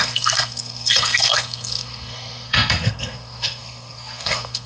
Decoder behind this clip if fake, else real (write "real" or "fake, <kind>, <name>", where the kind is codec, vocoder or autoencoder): fake, codec, SNAC